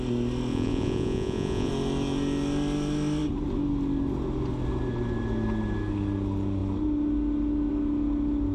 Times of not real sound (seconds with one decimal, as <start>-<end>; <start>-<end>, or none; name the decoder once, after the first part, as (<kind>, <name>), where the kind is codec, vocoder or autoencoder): 0.5-1.7 (vocoder, Vocos)